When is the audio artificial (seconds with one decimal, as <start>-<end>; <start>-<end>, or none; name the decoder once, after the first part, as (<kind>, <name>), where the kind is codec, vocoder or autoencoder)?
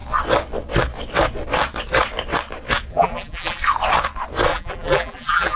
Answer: 2.9-3.6 (vocoder, BigVGAN v2); 4.5-5.6